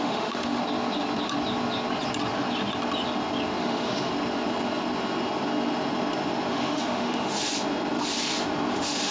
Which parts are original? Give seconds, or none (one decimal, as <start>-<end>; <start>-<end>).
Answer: 0.6-3.6; 4.1-6.5; 7.5-8.7